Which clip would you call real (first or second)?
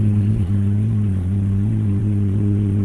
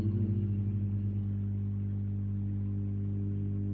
second